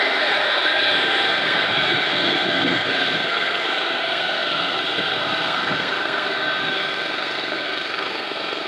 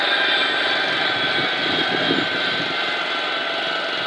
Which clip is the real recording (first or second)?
second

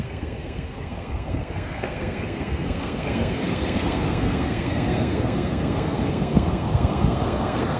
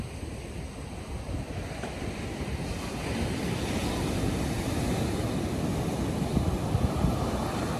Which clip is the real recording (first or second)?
second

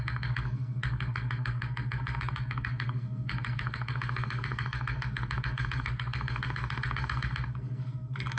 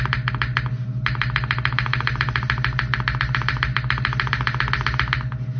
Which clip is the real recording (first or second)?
second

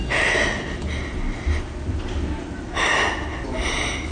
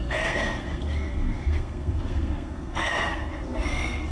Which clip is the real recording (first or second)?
first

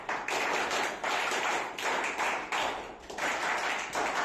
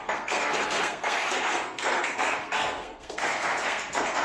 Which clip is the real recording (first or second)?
first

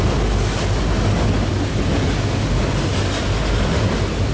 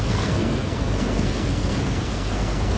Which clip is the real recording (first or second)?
first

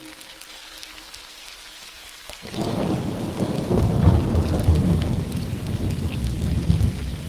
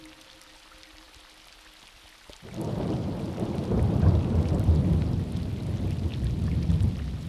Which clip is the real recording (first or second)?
second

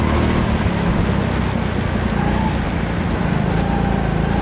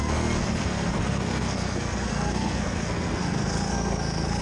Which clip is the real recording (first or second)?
first